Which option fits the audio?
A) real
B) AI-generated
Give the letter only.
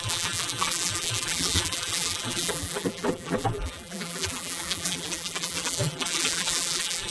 B